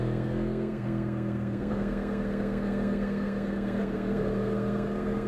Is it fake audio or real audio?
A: fake